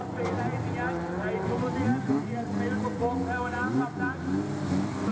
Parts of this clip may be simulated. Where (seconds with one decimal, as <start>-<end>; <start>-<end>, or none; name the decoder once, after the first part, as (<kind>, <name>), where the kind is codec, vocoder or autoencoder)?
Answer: none